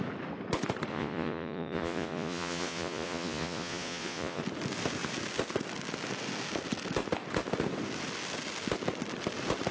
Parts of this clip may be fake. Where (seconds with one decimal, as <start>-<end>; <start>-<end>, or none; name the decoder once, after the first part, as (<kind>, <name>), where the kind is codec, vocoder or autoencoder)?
0.9-4.4 (vocoder, Vocos)

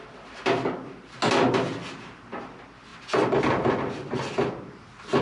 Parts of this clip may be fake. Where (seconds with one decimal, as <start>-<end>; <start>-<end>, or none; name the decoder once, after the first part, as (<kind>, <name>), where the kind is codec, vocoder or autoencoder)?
none

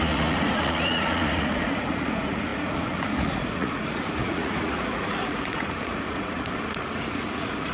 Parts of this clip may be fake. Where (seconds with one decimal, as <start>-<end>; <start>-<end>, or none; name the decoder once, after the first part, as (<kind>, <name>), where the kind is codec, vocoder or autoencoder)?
0.0-7.7 (vocoder, Vocos)